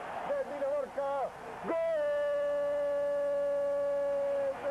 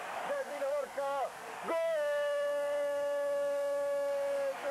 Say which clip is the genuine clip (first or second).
first